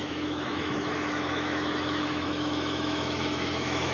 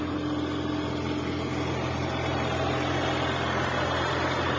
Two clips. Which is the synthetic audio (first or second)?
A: first